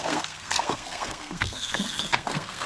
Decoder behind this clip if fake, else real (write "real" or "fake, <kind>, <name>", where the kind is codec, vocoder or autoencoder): fake, codec, SNAC